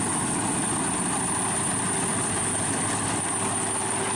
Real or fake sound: real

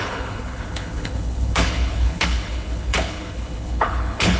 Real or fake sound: fake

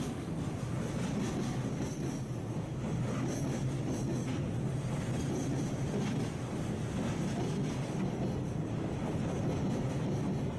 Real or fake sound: real